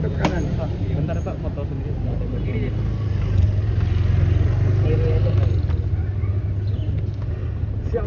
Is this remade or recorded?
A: recorded